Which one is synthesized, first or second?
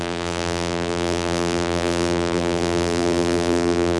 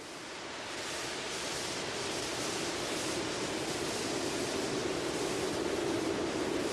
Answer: first